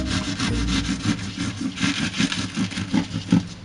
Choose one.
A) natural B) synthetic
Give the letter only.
A